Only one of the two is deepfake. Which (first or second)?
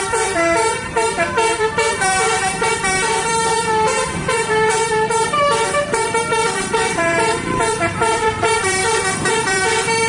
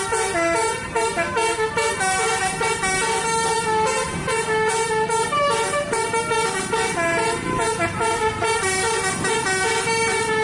first